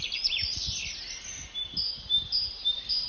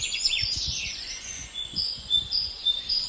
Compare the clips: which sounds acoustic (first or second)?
first